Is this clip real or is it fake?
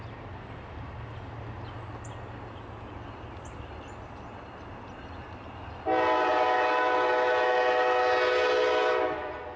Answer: real